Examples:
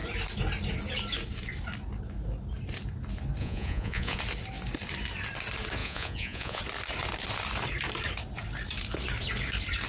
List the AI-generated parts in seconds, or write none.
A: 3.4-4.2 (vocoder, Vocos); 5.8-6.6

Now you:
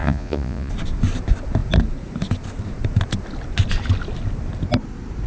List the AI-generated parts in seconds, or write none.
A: 0.0-0.7 (vocoder, Vocos)